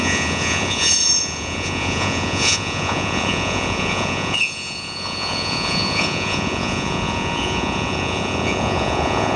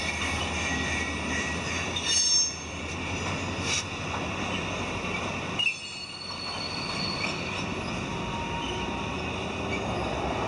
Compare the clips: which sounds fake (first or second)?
first